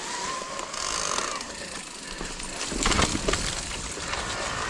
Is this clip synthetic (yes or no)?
no